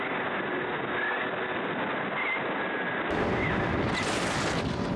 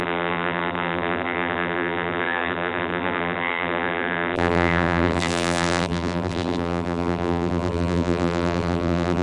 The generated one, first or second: second